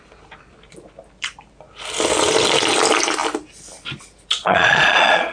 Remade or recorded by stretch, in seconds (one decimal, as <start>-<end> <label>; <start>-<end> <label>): 0.0-4.4 recorded; 4.4-5.3 remade